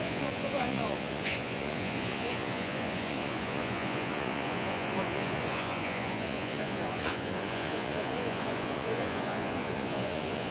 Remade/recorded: remade